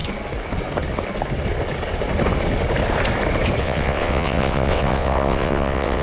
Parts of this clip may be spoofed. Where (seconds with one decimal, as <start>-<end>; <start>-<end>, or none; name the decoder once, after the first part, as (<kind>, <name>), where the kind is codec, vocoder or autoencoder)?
3.6-6.0 (vocoder, WaveNeXt)